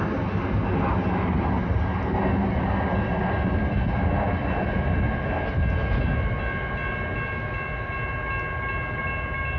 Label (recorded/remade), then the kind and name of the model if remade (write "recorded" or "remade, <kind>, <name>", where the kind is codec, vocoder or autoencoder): recorded